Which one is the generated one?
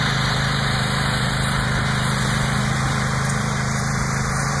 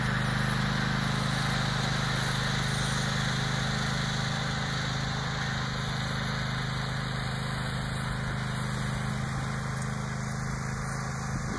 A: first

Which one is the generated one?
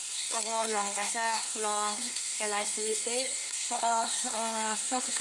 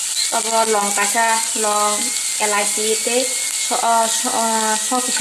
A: first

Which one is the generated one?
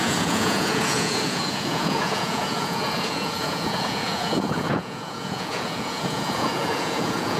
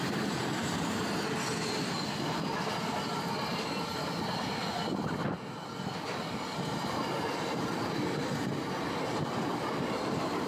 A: first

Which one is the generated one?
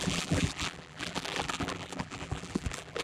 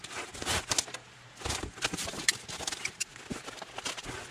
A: first